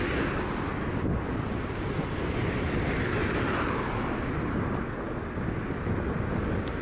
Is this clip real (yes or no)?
yes